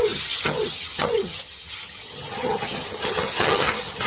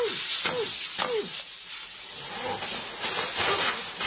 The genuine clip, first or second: second